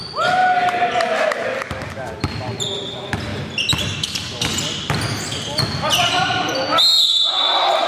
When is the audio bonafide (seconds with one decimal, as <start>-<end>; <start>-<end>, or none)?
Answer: 0.0-7.9